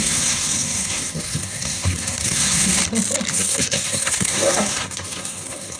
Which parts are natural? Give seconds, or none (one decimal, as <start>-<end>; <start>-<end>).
2.8-3.3

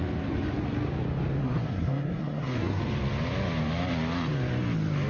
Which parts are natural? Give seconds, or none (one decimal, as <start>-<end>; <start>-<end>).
0.0-1.4; 2.8-5.1

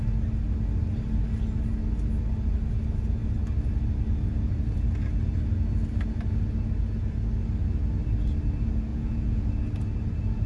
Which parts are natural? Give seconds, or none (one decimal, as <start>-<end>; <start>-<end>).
0.0-8.9; 9.5-10.5

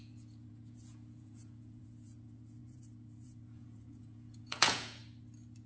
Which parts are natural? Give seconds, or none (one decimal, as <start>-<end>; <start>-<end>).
5.0-5.7

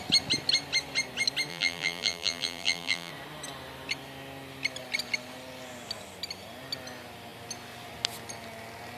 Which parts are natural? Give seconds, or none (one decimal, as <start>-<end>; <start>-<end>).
0.0-1.5; 3.1-9.0

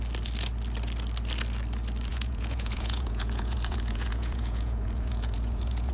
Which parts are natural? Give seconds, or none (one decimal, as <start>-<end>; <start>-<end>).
0.0-2.1